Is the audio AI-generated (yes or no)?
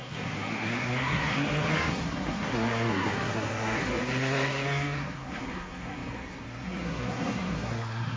yes